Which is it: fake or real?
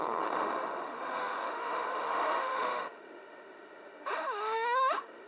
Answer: fake